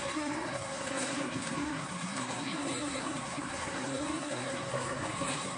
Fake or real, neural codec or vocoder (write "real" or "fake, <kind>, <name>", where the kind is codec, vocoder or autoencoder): fake, codec, SNAC